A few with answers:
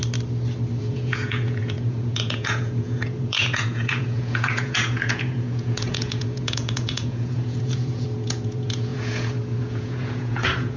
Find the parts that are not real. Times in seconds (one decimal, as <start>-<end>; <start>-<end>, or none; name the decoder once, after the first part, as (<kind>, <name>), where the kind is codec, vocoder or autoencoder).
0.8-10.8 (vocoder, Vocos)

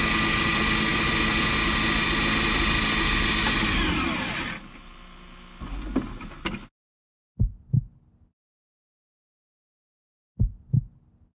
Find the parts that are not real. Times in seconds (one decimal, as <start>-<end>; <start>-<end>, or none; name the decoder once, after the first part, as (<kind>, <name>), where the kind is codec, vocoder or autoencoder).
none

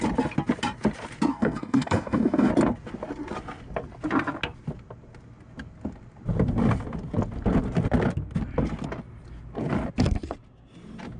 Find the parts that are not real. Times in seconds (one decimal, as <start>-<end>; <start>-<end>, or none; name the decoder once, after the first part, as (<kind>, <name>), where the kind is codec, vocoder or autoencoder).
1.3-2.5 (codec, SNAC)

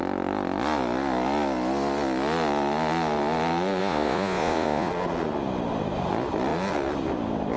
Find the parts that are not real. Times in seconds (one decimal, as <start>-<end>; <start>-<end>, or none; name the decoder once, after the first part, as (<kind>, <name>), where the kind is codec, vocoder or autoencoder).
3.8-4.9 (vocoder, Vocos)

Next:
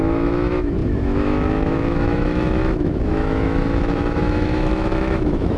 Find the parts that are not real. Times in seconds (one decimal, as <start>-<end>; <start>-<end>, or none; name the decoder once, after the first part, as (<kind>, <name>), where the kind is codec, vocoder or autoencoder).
0.0-5.6 (autoencoder, DAC-VAE)

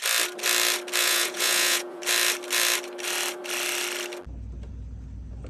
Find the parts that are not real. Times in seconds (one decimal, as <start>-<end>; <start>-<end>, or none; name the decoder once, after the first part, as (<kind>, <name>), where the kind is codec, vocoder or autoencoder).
1.0-2.0 (vocoder, Vocos)

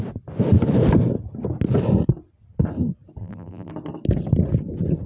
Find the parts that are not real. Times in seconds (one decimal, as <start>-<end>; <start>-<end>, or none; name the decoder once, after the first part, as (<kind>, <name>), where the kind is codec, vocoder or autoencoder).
3.2-3.7 (vocoder, BigVGAN v2)